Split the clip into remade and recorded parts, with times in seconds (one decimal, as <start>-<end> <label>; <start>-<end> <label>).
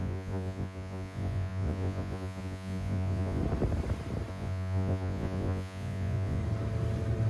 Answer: 0.0-3.4 remade; 3.4-4.3 recorded; 4.3-6.4 remade; 6.4-7.3 recorded